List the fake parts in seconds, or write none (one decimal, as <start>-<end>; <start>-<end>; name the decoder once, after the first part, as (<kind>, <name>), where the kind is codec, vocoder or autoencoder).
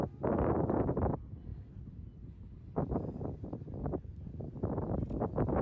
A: 1.5-3.5 (vocoder, BigVGAN v2)